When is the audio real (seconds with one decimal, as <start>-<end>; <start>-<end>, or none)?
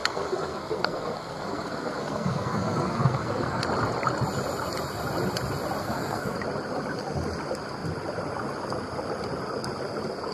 3.6-5.8; 6.4-10.3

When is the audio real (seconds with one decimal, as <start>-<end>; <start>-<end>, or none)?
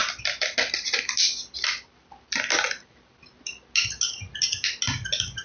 0.0-5.4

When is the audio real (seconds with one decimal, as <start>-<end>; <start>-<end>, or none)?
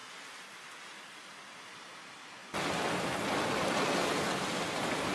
0.0-5.1